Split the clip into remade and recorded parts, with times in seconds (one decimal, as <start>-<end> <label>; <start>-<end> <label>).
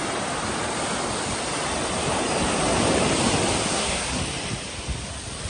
0.0-3.7 recorded; 3.7-4.2 remade; 4.2-5.5 recorded